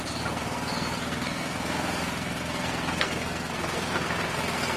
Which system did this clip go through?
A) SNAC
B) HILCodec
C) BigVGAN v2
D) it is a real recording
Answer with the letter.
A